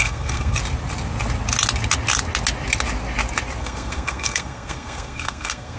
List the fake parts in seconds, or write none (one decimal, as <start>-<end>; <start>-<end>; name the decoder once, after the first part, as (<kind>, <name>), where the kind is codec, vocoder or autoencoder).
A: 0.0-0.6 (codec, SNAC); 3.6-5.8